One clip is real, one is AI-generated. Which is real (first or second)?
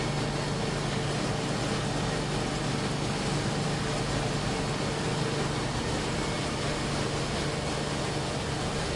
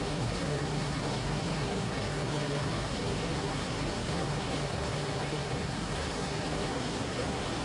first